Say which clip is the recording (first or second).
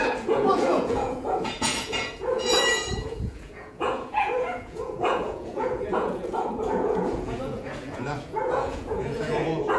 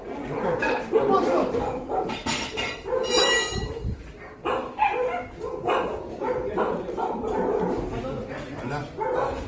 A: second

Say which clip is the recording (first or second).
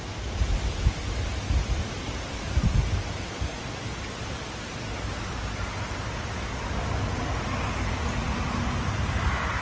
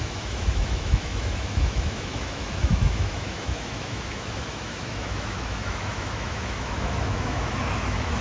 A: first